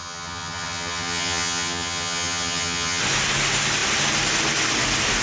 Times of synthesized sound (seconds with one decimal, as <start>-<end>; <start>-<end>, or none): 0.0-3.0